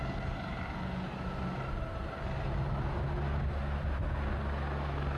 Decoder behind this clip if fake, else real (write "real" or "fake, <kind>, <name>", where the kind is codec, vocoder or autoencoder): real